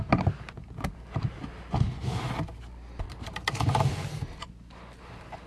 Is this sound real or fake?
real